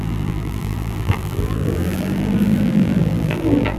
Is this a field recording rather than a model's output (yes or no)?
no